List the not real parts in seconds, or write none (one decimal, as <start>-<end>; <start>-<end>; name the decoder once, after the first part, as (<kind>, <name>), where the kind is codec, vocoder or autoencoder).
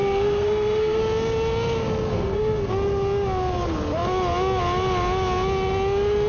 0.0-1.0 (codec, SNAC); 2.1-2.7